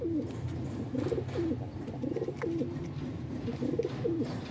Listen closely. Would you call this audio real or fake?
real